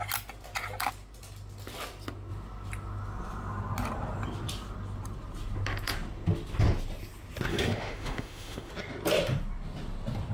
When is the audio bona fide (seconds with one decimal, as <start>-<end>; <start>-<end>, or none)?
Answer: 0.0-7.5; 8.7-10.3